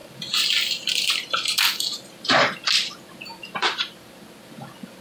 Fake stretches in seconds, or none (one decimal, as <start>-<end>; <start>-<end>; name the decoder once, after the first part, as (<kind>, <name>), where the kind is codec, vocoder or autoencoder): 0.0-3.0 (vocoder, BigVGAN v2); 3.4-4.1